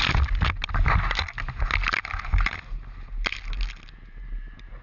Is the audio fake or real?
real